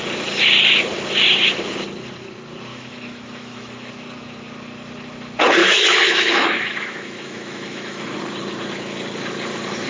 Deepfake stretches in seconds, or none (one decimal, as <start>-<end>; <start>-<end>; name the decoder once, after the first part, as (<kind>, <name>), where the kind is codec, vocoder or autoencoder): 2.7-3.9 (autoencoder, DAC-VAE); 5.6-8.1

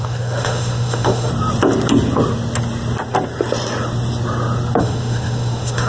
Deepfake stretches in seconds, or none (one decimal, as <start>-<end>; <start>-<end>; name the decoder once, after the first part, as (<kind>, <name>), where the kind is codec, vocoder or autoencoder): 0.0-1.3 (autoencoder, DAC-VAE); 4.8-5.9

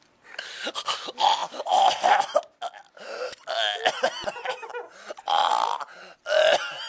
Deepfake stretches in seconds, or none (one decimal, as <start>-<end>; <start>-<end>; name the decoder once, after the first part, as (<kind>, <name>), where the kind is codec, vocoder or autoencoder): none

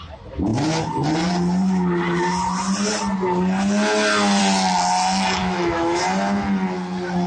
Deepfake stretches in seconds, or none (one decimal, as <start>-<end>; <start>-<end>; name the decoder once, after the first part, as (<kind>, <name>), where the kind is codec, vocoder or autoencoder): 5.4-6.0 (autoencoder, DAC-VAE)

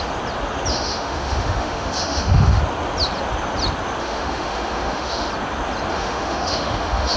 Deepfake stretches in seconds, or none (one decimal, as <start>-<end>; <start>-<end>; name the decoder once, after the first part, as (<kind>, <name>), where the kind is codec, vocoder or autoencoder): 0.7-2.6 (autoencoder, DAC-VAE); 4.0-5.3; 5.9-7.2

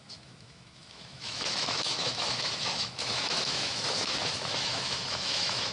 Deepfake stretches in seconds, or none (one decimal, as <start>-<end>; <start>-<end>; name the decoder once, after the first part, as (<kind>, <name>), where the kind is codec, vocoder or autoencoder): 0.0-5.7 (autoencoder, DAC-VAE)

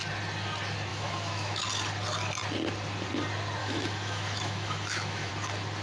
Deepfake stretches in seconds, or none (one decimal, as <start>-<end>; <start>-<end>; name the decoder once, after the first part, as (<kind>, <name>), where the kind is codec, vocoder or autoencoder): 0.9-1.6 (autoencoder, DAC-VAE); 3.6-5.3

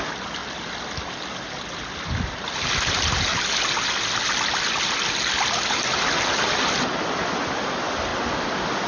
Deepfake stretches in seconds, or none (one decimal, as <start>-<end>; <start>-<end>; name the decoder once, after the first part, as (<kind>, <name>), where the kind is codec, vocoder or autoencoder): none